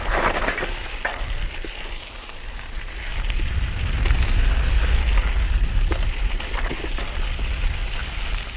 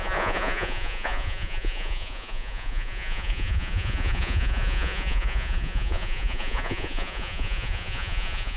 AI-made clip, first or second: second